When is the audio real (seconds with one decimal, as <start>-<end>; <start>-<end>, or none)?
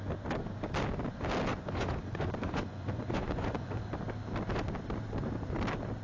0.0-1.5; 3.8-6.0